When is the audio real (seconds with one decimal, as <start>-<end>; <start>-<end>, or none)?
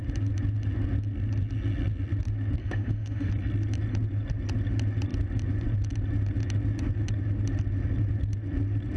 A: 0.0-2.6; 3.3-9.0